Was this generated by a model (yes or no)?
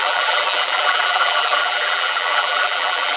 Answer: yes